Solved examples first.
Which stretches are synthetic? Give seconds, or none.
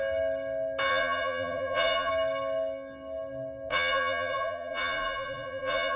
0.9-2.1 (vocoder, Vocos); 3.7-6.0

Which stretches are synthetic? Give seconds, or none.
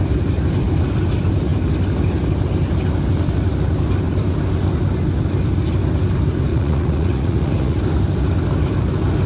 6.5-7.8 (vocoder, Vocos)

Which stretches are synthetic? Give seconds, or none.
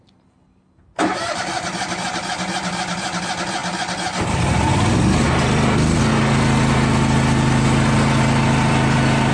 none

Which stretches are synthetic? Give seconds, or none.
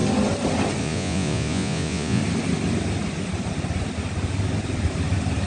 0.8-2.2 (vocoder, Vocos)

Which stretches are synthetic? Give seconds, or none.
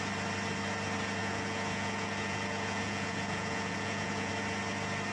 1.2-4.3 (vocoder, Vocos)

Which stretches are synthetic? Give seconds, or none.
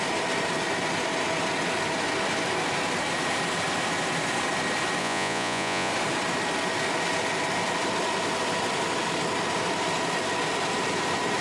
5.0-5.9 (vocoder, Vocos)